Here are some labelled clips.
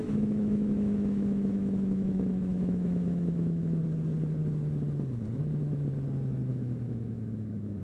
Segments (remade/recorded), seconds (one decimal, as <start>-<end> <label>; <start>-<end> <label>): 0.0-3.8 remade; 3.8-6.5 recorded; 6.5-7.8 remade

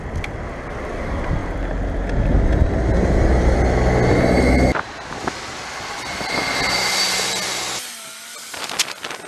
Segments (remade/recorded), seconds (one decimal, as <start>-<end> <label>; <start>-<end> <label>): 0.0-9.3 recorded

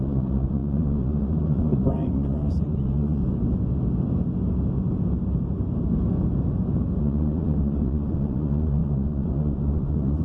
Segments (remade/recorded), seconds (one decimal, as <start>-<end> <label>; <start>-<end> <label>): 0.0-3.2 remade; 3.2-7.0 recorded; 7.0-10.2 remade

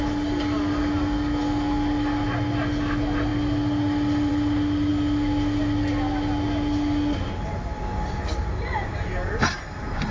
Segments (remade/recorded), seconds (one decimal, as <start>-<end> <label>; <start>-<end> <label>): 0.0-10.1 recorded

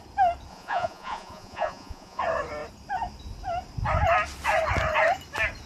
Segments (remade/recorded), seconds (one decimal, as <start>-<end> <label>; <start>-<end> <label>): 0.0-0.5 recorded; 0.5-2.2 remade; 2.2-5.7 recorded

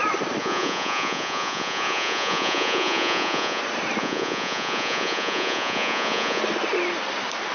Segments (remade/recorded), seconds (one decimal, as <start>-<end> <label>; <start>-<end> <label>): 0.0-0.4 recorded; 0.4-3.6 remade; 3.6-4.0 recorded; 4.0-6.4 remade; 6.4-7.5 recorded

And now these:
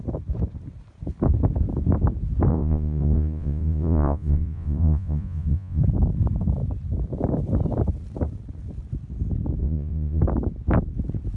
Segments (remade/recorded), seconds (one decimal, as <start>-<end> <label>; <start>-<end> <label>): 0.0-2.5 recorded; 2.5-5.8 remade; 5.8-9.6 recorded; 9.6-10.2 remade; 10.2-11.4 recorded

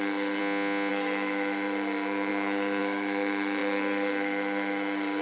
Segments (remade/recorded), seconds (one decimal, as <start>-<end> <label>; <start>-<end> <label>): 0.0-0.4 remade; 0.4-0.9 recorded; 0.9-5.2 remade